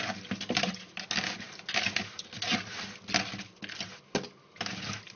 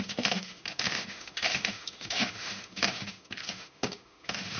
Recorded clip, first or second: first